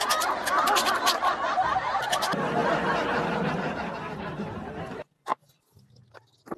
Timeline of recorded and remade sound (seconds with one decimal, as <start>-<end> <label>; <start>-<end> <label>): 0.0-6.6 recorded